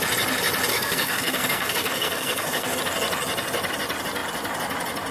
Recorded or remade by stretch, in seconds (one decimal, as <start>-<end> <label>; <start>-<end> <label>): 0.0-0.7 recorded; 0.7-2.8 remade; 2.8-5.1 recorded